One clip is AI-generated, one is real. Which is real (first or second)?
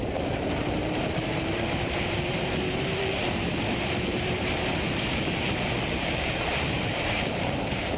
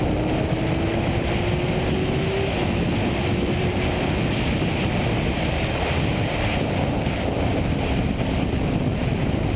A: second